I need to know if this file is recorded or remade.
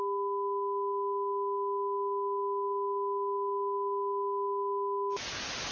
recorded